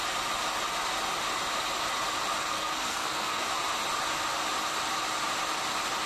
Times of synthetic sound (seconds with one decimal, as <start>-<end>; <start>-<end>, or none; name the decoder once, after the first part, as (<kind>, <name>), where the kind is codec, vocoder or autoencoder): 2.5-3.4 (codec, SNAC)